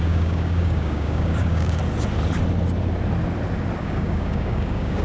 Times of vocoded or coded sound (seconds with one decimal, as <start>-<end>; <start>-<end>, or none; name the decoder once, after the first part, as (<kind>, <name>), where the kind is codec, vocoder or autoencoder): 0.0-1.8 (codec, DAC); 3.8-5.0